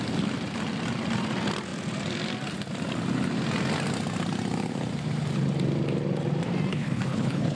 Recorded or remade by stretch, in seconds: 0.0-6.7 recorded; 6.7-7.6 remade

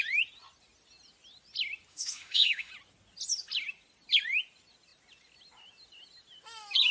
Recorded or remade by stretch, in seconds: 0.0-1.9 recorded; 1.9-2.7 remade; 2.7-6.9 recorded

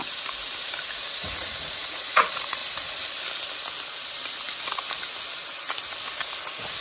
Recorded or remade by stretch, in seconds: 0.0-1.2 recorded; 1.2-2.6 remade; 2.6-6.8 recorded

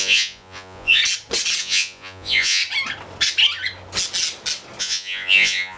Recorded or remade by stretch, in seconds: 0.0-1.0 remade; 1.0-1.6 recorded; 1.6-2.6 remade; 2.6-4.8 recorded; 4.8-5.8 remade

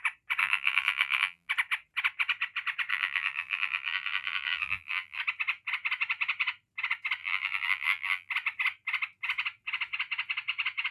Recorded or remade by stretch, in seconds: 0.0-0.4 recorded; 0.4-1.5 remade; 1.5-2.9 recorded; 2.9-5.2 remade; 5.2-7.2 recorded; 7.2-8.3 remade; 8.3-10.9 recorded

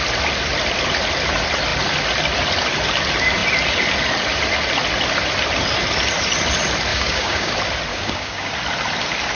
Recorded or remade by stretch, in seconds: 0.0-6.9 recorded; 6.9-7.5 remade; 7.5-7.9 recorded; 7.9-8.5 remade; 8.5-9.3 recorded

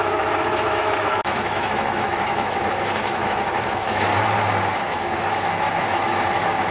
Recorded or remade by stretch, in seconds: 0.0-4.1 remade; 4.1-4.9 recorded; 4.9-6.7 remade